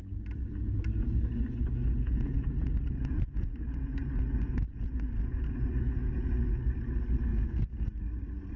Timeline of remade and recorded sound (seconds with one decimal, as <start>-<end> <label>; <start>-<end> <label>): 0.0-1.7 recorded; 1.7-6.6 remade; 6.6-7.3 recorded; 7.3-8.0 remade; 8.0-8.6 recorded